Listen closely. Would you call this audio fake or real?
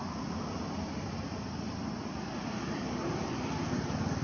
real